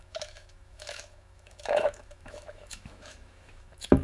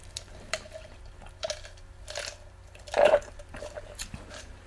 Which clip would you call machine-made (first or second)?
first